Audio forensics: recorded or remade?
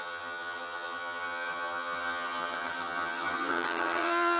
remade